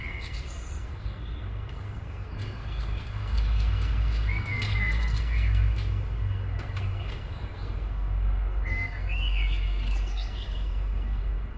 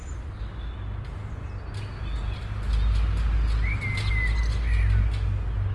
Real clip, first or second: second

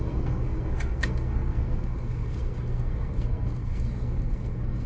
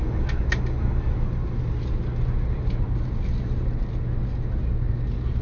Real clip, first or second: second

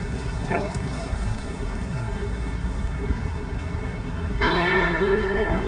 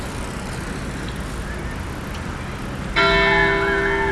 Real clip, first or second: second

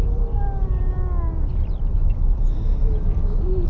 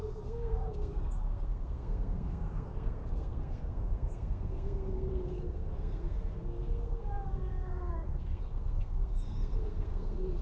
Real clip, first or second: first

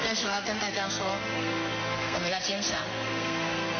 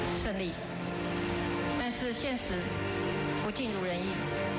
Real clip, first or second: second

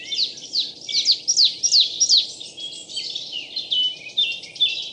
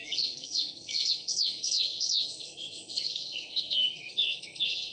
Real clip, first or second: first